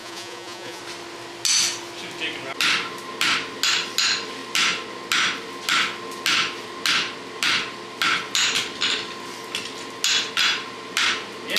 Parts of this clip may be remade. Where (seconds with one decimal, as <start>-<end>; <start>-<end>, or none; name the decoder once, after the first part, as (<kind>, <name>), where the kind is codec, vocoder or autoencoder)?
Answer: 0.0-0.8 (vocoder, Vocos)